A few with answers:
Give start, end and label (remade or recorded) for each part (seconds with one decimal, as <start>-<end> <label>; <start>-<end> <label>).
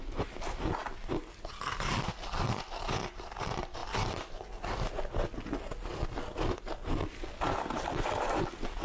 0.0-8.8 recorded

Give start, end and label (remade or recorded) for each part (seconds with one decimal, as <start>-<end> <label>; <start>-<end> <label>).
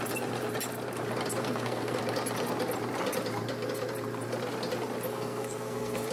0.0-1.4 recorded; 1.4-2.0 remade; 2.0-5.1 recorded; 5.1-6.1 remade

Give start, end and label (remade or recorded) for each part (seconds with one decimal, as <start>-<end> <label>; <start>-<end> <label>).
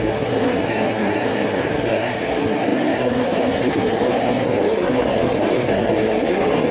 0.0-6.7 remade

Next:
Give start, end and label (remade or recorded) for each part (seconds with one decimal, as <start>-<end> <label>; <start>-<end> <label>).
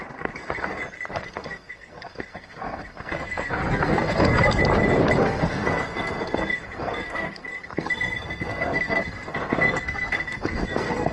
0.0-0.8 remade; 0.8-1.3 recorded; 1.3-4.6 remade; 4.6-5.2 recorded; 5.2-11.1 remade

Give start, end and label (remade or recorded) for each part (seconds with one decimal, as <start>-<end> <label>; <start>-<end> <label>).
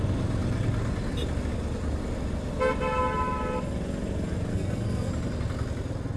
0.0-4.5 recorded; 4.5-5.1 remade; 5.1-6.2 recorded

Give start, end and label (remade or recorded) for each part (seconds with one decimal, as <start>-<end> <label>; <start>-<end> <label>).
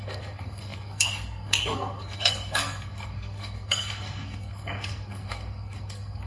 0.0-6.3 remade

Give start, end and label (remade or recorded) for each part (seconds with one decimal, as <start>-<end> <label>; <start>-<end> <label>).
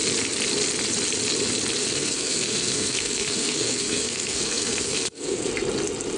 0.0-1.8 recorded; 1.8-5.5 remade; 5.5-6.2 recorded